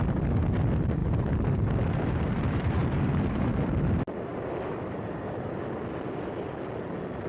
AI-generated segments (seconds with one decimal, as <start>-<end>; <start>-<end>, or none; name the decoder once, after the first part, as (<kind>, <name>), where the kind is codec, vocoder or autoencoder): 1.0-3.5 (vocoder, BigVGAN v2); 4.3-5.6

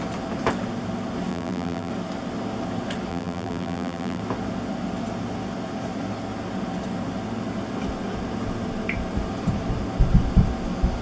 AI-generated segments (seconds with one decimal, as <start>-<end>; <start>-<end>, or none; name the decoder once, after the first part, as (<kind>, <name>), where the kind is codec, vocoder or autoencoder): 1.3-1.9 (vocoder, BigVGAN v2); 3.1-4.2

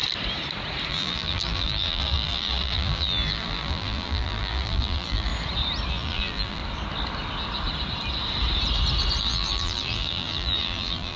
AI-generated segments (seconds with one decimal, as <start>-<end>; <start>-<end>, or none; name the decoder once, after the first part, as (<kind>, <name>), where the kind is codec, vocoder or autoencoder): 0.9-5.3 (vocoder, BigVGAN v2); 5.9-6.6; 9.2-11.2

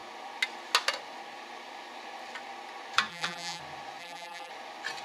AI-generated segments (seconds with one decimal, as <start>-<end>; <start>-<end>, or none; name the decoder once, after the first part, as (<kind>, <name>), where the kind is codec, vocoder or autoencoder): 3.1-3.6 (vocoder, BigVGAN v2); 4.0-4.5

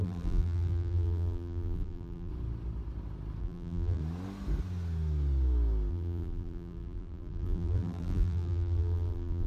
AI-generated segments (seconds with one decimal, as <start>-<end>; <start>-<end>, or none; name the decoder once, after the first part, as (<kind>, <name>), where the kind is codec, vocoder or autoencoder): 0.0-2.3 (vocoder, BigVGAN v2); 3.4-4.0; 5.9-9.5